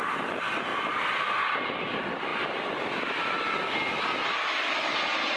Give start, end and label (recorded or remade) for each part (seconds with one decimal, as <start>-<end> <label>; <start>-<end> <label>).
0.0-0.7 remade; 0.7-1.8 recorded; 1.8-5.4 remade